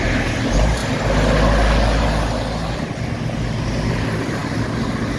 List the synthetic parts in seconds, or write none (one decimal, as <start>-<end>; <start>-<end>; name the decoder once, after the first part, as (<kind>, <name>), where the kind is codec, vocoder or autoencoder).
0.0-0.8 (vocoder, BigVGAN v2); 3.9-5.2